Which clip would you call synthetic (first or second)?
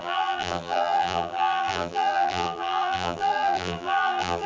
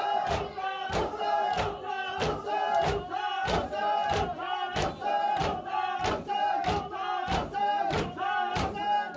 first